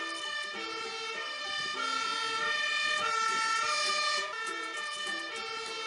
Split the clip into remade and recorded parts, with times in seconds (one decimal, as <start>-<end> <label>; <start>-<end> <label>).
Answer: 0.0-3.9 recorded; 3.9-5.2 remade; 5.2-5.9 recorded